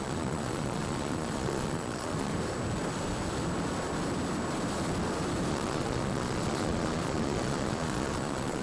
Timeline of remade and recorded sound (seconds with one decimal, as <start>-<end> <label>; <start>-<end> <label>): 0.0-2.3 remade; 2.3-5.5 recorded; 5.5-8.6 remade